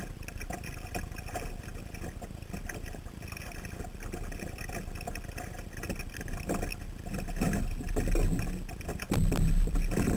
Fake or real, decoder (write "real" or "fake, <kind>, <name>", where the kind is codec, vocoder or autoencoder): real